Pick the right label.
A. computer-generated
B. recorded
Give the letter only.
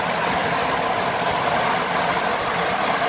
A